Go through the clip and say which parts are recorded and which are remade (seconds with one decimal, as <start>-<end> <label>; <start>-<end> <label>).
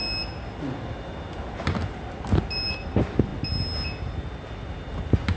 0.0-5.4 recorded